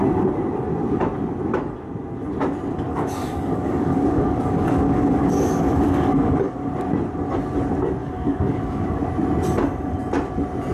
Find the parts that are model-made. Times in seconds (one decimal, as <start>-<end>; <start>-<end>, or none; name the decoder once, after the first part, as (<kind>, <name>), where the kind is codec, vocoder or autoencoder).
2.9-6.6 (codec, DAC); 8.0-9.0